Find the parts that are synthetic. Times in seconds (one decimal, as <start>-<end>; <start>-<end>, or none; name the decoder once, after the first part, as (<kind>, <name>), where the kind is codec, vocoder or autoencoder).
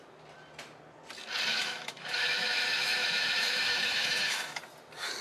1.5-4.6 (autoencoder, DAC-VAE)